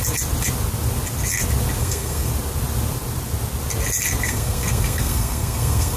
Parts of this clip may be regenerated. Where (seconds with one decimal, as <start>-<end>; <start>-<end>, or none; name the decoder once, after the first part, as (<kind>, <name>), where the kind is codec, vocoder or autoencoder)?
1.8-2.3 (codec, SNAC); 4.2-6.0